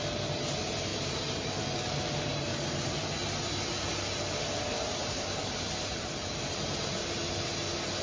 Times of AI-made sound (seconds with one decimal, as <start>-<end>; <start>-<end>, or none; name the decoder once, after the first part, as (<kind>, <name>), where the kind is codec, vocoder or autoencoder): 0.9-1.5 (vocoder, BigVGAN v2); 2.3-3.0; 5.0-7.0